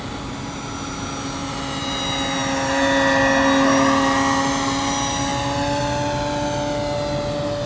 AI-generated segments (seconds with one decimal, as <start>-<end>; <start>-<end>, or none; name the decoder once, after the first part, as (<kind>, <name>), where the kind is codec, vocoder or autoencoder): none